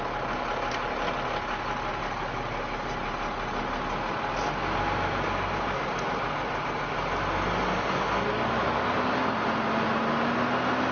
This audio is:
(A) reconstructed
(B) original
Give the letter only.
B